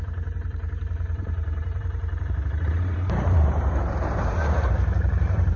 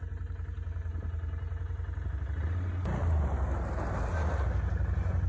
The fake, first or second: first